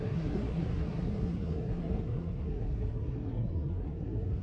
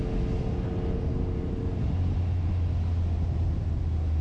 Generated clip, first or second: first